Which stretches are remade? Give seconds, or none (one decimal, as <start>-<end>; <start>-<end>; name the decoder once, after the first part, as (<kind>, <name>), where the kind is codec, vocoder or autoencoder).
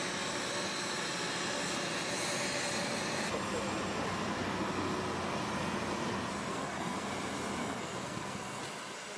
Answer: 6.5-7.1 (codec, SNAC); 7.6-8.6